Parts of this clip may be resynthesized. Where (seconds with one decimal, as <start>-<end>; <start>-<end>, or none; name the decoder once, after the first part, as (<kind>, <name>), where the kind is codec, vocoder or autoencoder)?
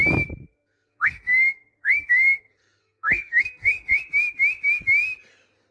0.6-4.0 (codec, SNAC)